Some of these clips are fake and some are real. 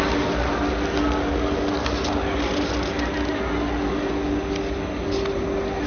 real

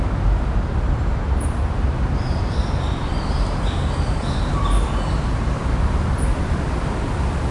fake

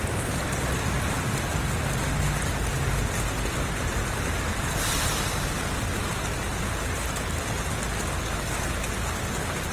real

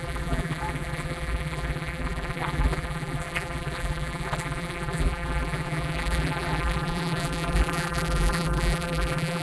fake